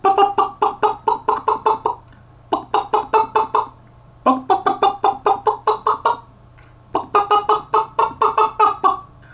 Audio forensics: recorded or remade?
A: recorded